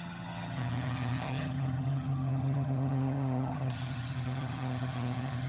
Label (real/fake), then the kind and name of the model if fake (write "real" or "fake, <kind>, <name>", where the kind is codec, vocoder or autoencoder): fake, vocoder, HiFi-GAN